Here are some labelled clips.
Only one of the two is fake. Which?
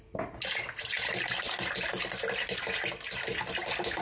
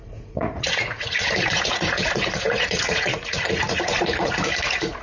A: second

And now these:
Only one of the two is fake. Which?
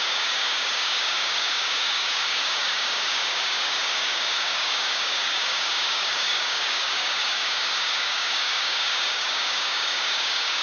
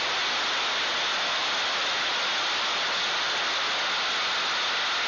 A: first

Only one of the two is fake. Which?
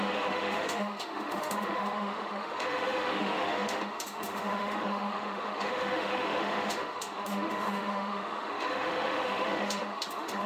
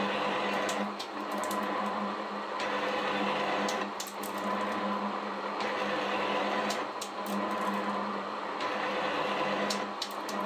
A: first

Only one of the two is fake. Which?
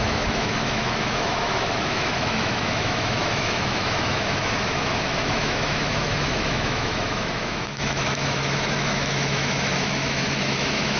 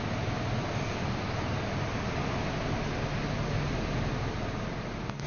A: first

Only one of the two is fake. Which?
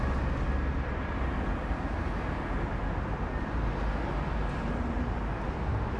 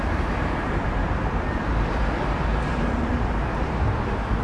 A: second